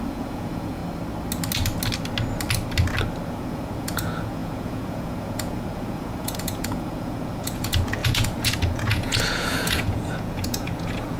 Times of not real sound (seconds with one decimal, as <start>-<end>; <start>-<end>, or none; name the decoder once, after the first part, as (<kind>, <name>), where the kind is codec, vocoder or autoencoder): 0.0-0.8 (vocoder, Vocos); 3.3-11.2